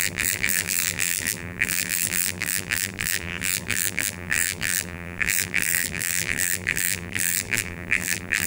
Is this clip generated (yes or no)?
yes